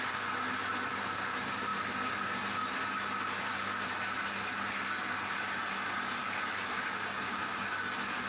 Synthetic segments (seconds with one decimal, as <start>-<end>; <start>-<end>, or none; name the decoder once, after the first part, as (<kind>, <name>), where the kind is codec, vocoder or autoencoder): 6.2-7.3 (codec, DAC)